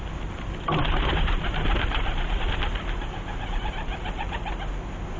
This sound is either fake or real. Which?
real